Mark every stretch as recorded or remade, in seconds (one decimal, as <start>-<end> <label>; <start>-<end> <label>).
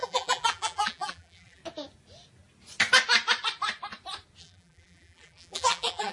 0.0-1.6 remade; 1.6-4.4 recorded; 4.4-6.1 remade